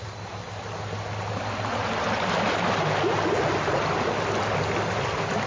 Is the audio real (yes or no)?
yes